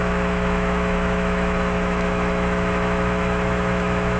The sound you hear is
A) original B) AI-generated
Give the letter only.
B